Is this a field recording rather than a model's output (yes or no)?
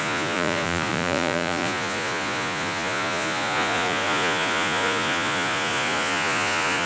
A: no